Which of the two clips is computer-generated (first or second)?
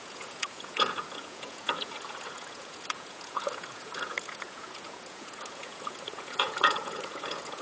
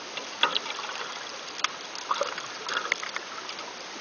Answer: first